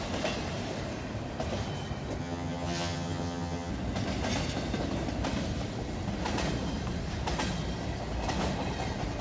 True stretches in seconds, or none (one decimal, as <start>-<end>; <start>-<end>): 0.0-2.2; 3.7-9.2